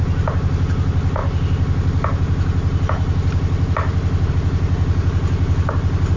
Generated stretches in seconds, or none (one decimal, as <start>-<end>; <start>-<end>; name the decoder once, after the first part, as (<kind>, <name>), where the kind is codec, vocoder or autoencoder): none